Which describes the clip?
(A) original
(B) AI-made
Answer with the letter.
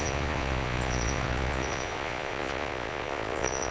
B